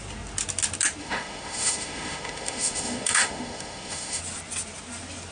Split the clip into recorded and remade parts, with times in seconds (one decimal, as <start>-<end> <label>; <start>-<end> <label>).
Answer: 0.0-1.0 recorded; 1.0-4.2 remade; 4.2-5.3 recorded